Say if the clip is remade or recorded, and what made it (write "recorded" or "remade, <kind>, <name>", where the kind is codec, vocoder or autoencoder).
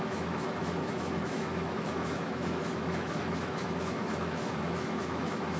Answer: remade, autoencoder, DAC-VAE